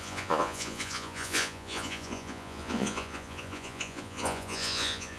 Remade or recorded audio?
remade